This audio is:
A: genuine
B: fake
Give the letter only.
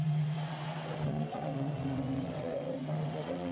B